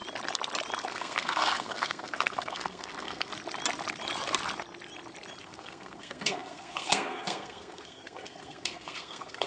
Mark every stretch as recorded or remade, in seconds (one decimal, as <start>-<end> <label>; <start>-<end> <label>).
0.0-0.9 recorded; 0.9-3.3 remade; 3.3-5.4 recorded; 5.4-9.5 remade